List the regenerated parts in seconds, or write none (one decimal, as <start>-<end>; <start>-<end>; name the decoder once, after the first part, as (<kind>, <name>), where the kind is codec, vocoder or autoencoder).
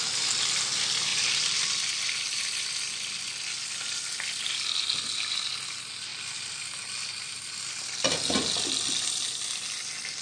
none